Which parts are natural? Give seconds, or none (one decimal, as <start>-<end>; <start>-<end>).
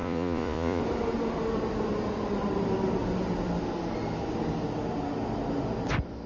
0.8-6.3